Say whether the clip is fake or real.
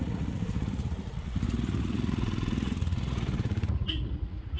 fake